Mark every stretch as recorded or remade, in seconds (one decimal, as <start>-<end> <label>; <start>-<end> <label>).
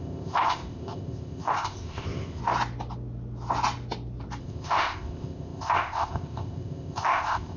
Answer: 0.0-2.4 remade; 2.4-4.4 recorded; 4.4-7.6 remade